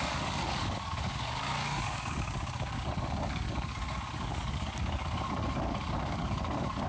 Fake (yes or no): yes